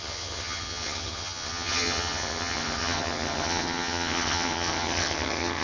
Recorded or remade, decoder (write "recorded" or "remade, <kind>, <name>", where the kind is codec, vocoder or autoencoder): remade, vocoder, HiFi-GAN